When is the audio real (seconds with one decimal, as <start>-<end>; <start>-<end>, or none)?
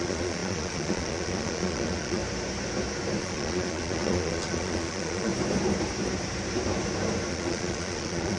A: 2.2-3.2; 5.3-7.3